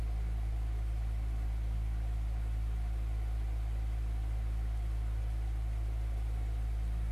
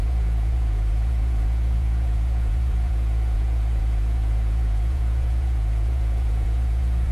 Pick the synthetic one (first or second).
second